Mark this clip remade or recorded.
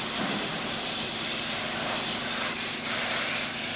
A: recorded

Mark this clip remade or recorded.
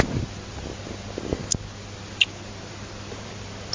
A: recorded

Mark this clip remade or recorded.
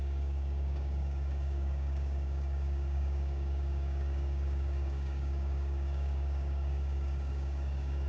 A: remade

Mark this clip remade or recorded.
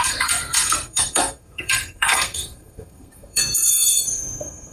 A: remade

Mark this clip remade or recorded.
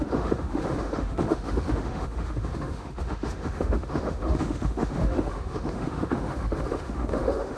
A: remade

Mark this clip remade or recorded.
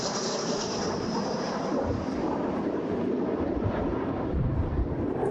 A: remade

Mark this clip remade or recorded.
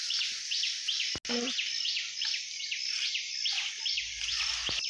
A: recorded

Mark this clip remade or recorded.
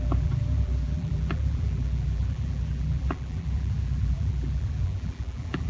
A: remade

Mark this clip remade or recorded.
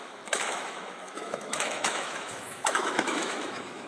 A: remade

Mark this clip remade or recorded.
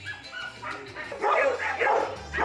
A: recorded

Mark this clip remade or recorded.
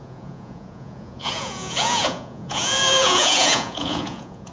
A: remade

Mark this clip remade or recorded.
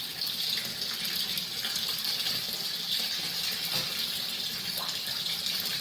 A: recorded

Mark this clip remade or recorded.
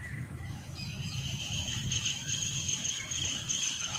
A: remade